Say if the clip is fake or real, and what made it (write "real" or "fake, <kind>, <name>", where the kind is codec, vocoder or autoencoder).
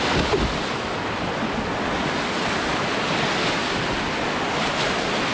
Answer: real